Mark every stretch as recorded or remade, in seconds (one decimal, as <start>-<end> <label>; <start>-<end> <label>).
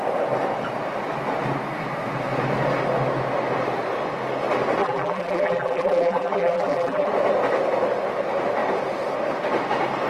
0.0-4.8 recorded; 4.8-7.1 remade; 7.1-10.1 recorded